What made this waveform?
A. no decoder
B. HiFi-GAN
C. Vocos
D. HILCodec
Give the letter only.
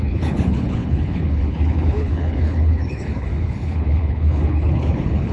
D